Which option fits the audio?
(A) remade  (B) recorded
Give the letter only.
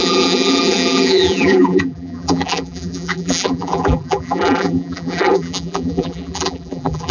A